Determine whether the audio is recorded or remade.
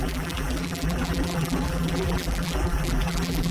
remade